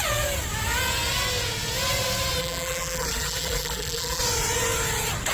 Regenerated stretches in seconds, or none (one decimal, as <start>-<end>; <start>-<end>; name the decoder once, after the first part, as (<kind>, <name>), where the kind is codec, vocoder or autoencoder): 2.4-4.2 (vocoder, BigVGAN v2)